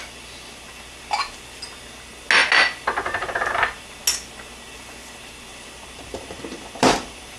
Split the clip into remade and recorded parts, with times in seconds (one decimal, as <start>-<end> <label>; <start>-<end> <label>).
0.0-5.5 recorded; 5.5-7.4 remade